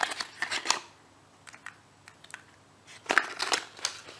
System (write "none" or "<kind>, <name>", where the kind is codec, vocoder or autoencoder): none